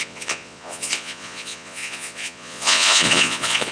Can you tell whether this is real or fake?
fake